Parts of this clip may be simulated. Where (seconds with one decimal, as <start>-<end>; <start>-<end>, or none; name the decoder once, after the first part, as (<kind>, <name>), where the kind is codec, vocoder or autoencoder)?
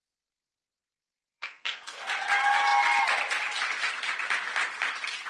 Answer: 0.0-2.1 (codec, SNAC)